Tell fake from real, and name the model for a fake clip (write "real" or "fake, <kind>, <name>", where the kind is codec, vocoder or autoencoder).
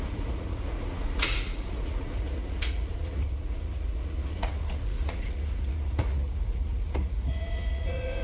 fake, vocoder, Vocos